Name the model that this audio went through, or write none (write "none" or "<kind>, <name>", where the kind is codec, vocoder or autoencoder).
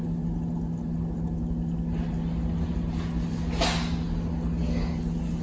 none